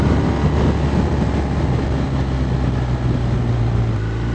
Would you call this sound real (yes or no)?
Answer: yes